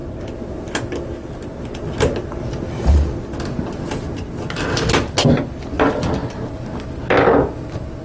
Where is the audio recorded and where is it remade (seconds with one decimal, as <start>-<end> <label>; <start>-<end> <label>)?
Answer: 0.0-8.0 recorded